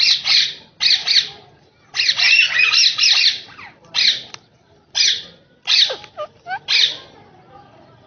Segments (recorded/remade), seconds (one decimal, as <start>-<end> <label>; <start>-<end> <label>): 0.0-8.1 recorded